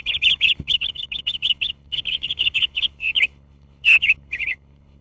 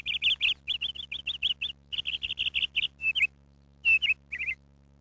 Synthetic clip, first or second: first